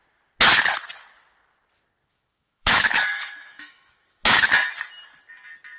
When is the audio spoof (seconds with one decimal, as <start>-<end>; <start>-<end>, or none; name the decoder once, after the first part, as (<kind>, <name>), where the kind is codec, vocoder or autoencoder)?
2.1-4.5 (autoencoder, DAC-VAE)